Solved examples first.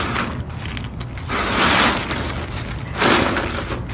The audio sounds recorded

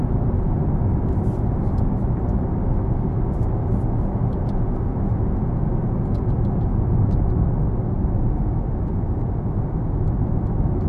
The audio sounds recorded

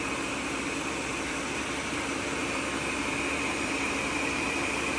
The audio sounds remade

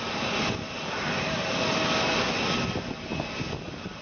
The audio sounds recorded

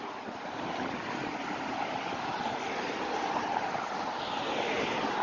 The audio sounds recorded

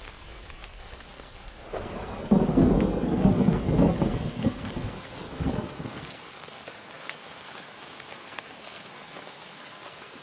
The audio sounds remade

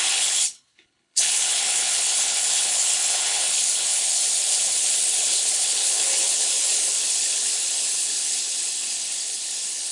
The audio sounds remade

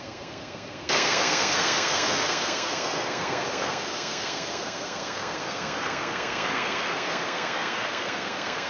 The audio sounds remade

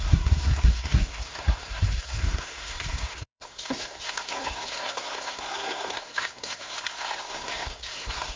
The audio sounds remade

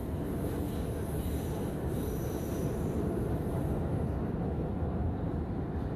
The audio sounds recorded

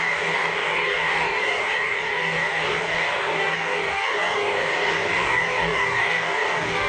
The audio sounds remade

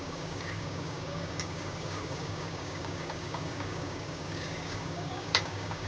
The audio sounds remade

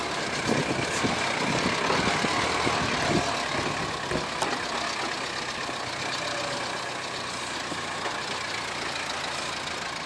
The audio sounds recorded